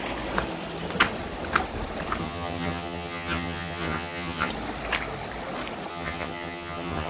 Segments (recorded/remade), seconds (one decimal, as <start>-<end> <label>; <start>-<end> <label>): 0.0-2.2 recorded; 2.2-4.5 remade; 4.5-5.9 recorded; 5.9-7.1 remade